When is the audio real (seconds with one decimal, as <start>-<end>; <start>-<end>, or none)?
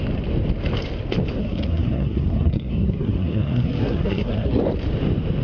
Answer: 0.0-1.4; 4.6-5.4